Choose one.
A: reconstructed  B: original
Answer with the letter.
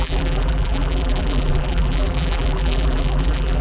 A